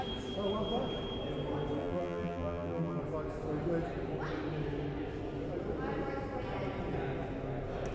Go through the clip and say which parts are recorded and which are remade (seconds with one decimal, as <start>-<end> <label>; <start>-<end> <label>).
0.0-1.8 recorded; 1.8-3.0 remade; 3.0-7.9 recorded